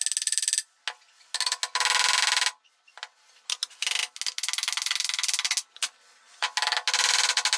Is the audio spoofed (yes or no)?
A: no